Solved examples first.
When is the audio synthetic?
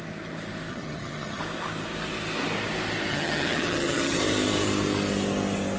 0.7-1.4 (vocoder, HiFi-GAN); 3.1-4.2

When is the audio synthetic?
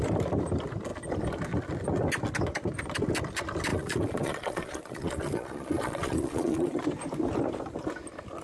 3.7-6.8 (vocoder, Vocos)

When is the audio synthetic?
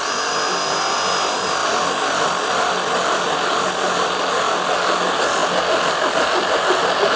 none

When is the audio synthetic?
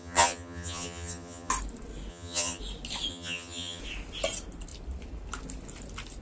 0.0-1.5 (vocoder, HiFi-GAN); 2.1-2.6; 3.1-3.8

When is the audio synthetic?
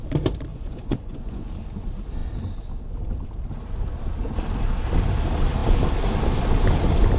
0.5-1.5 (vocoder, Vocos)